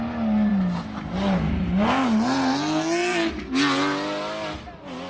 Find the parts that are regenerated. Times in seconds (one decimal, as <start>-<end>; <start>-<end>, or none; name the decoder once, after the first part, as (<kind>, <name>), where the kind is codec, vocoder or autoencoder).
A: none